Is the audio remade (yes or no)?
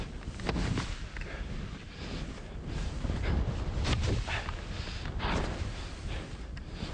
no